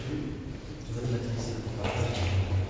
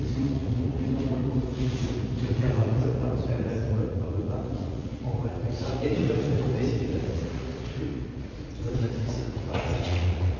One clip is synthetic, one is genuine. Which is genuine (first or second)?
first